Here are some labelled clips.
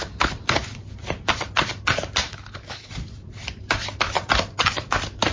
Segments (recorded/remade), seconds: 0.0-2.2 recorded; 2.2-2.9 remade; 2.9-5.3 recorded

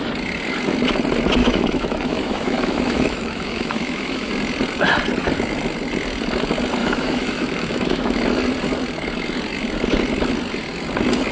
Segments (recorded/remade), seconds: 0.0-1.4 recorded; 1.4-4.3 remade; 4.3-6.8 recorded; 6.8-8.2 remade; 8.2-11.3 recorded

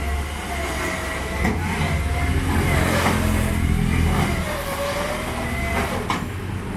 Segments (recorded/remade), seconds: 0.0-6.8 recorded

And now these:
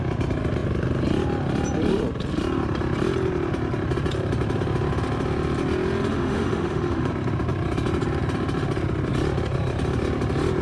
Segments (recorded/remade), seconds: 0.0-6.1 recorded; 6.1-7.1 remade; 7.1-10.6 recorded